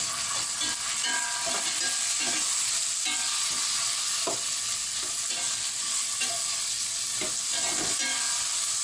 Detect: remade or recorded recorded